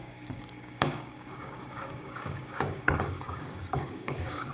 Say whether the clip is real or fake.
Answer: fake